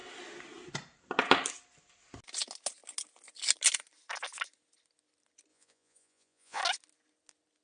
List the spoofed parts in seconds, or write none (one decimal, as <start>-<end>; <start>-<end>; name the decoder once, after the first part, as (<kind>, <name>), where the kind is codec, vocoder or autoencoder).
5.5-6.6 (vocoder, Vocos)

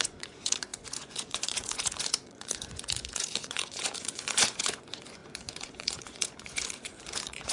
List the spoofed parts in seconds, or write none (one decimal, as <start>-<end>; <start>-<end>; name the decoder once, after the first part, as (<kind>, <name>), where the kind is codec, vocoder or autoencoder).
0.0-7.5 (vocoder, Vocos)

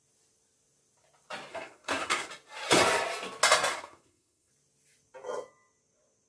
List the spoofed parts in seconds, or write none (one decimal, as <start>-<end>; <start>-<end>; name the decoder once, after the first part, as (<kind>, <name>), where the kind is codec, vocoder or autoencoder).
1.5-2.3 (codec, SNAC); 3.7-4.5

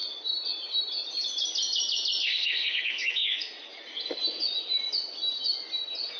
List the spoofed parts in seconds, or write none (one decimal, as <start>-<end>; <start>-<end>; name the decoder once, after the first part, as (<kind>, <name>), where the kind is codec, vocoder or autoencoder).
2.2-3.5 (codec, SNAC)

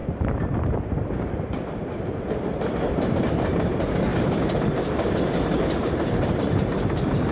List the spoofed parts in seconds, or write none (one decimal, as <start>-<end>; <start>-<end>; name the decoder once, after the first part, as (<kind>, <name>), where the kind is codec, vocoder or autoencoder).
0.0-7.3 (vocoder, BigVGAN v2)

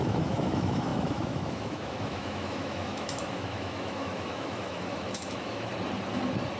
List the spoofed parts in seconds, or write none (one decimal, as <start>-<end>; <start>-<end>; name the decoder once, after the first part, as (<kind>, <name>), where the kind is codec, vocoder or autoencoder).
0.0-5.7 (autoencoder, DAC-VAE)